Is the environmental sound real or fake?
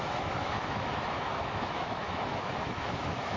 fake